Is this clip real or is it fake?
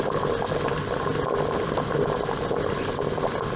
real